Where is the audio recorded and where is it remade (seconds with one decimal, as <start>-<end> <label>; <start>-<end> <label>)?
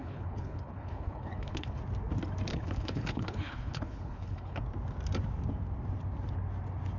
0.0-1.8 remade; 1.8-2.5 recorded; 2.5-4.6 remade; 4.6-7.0 recorded